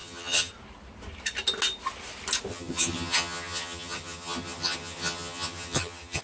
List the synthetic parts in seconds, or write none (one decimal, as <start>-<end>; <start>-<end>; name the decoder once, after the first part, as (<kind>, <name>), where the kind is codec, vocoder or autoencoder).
0.0-0.5 (vocoder, HiFi-GAN); 2.5-6.2